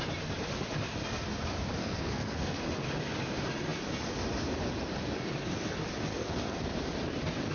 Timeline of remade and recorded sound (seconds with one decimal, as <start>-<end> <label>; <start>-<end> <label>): 0.0-1.8 recorded; 1.8-2.6 remade; 2.6-6.1 recorded; 6.1-6.6 remade; 6.6-7.5 recorded